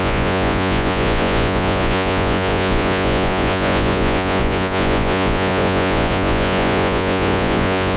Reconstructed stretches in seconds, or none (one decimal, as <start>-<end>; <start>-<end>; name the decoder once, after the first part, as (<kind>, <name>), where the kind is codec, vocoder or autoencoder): 0.0-8.0 (vocoder, Vocos)